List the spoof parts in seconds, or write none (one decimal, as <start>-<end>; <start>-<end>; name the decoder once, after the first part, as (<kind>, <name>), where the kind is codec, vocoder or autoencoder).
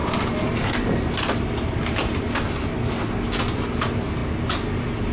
0.0-3.1 (vocoder, BigVGAN v2)